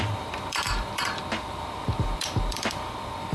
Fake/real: fake